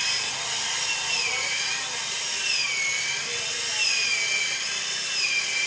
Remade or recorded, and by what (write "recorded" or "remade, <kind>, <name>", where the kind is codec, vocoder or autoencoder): recorded